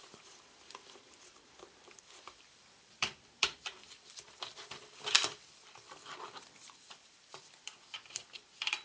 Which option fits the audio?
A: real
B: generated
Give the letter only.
B